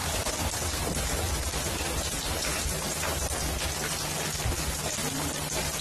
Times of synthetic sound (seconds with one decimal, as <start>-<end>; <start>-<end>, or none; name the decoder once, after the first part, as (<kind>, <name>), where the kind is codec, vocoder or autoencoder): 0.0-3.3 (vocoder, BigVGAN v2); 4.5-5.8